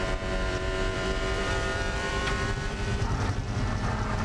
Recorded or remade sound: remade